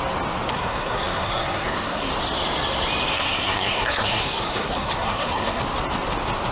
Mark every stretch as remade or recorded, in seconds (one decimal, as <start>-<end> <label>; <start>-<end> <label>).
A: 0.0-0.5 recorded; 0.5-2.1 remade; 2.1-3.1 recorded; 3.1-5.6 remade; 5.6-6.5 recorded

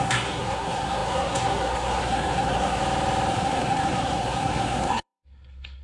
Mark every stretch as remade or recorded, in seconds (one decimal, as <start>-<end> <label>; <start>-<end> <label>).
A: 0.0-2.8 remade; 2.8-3.3 recorded; 3.3-5.8 remade

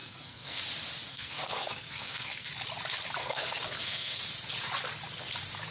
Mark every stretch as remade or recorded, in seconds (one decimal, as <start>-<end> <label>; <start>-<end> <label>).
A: 0.0-0.6 remade; 0.6-1.1 recorded; 1.1-2.5 remade; 2.5-3.2 recorded; 3.2-4.2 remade; 4.2-5.7 recorded

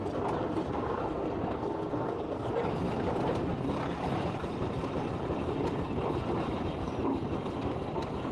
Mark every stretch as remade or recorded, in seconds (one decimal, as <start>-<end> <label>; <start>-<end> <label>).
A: 0.0-0.6 recorded; 0.6-2.4 remade; 2.4-8.3 recorded

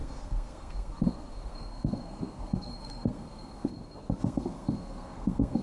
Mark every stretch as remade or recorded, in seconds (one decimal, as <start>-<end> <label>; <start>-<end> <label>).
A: 0.0-3.7 remade; 3.7-4.2 recorded; 4.2-5.6 remade